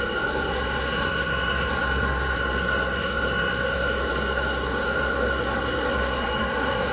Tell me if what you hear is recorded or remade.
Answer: remade